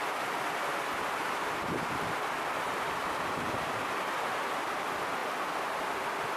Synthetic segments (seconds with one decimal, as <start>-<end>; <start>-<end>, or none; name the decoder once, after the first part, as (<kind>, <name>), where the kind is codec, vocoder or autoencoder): none